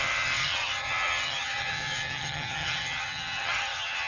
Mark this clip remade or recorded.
remade